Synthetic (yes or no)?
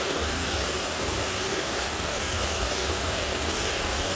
yes